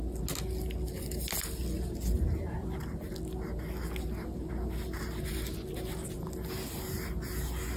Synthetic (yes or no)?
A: no